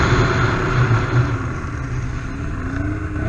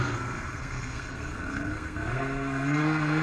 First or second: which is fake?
second